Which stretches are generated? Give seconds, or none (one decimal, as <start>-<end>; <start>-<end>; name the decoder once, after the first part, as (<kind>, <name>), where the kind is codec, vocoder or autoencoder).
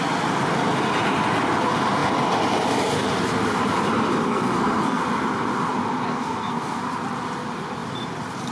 4.3-5.0 (codec, SNAC); 6.1-6.8